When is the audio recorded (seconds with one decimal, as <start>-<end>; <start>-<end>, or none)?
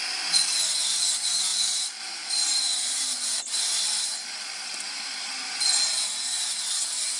0.0-1.5; 5.2-7.2